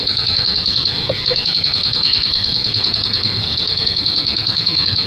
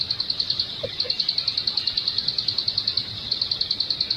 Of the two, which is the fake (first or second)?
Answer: first